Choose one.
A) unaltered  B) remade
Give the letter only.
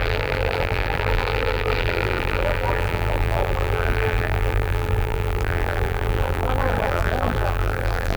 B